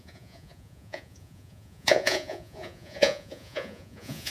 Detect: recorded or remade remade